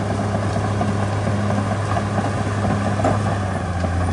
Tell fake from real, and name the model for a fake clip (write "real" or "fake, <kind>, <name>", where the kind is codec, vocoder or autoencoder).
real